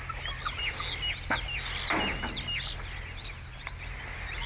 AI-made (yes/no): no